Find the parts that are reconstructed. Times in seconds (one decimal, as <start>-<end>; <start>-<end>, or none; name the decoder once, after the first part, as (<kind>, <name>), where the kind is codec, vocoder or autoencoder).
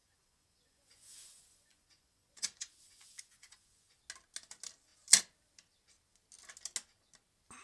0.0-4.0 (vocoder, Vocos)